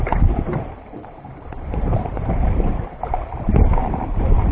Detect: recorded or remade remade